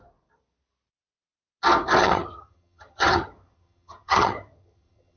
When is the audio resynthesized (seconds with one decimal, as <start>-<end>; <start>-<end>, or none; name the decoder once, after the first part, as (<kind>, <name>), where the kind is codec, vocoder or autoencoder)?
2.0-5.2 (vocoder, HiFi-GAN)